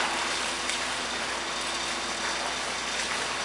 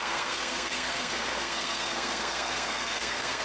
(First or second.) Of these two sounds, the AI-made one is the second